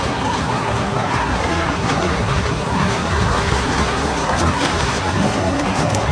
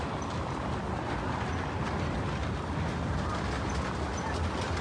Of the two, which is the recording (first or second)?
second